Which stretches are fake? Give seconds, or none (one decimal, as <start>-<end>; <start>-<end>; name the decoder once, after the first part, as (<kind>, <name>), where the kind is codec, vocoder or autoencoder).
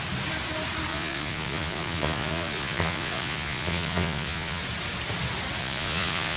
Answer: 0.9-4.6 (vocoder, Vocos); 5.6-6.4